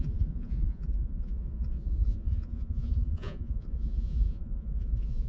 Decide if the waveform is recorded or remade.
remade